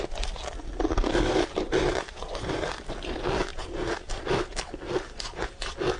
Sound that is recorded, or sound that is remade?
recorded